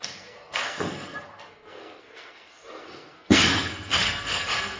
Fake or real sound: fake